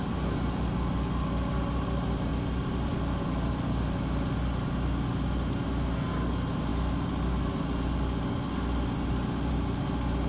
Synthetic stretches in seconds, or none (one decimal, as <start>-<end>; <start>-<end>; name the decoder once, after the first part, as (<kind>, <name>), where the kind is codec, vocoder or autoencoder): none